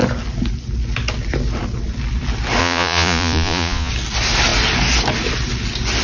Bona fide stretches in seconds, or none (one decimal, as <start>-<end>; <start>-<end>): 0.0-2.6; 3.9-6.0